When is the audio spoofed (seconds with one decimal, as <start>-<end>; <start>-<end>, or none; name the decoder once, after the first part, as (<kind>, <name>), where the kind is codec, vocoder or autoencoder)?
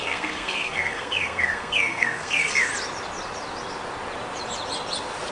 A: 0.0-2.7 (codec, SNAC)